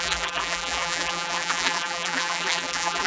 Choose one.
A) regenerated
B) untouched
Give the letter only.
A